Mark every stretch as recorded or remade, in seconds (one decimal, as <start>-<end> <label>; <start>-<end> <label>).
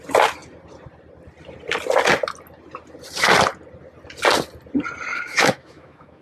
0.0-5.1 recorded; 5.1-6.2 remade